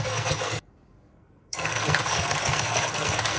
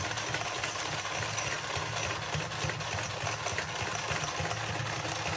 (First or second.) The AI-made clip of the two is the first